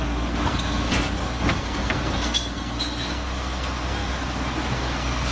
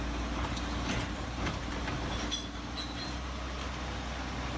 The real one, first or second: second